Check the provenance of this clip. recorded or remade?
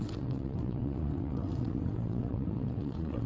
remade